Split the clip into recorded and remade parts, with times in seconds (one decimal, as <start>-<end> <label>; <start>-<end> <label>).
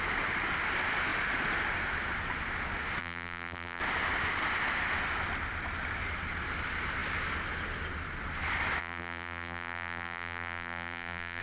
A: 0.0-3.0 recorded; 3.0-3.8 remade; 3.8-8.8 recorded; 8.8-11.4 remade